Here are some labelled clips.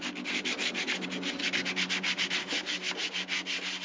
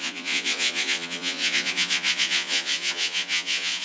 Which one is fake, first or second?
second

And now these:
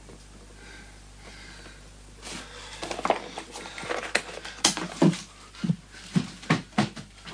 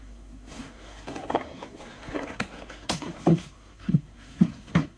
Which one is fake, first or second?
second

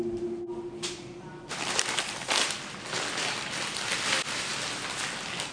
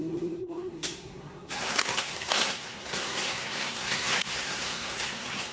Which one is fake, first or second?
second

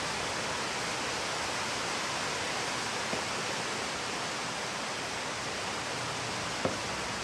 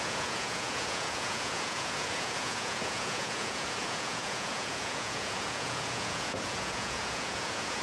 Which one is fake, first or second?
second